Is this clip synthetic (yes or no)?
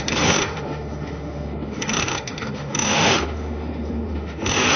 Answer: yes